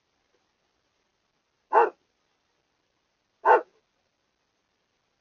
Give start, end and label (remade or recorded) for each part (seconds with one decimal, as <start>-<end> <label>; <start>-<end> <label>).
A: 0.0-5.2 recorded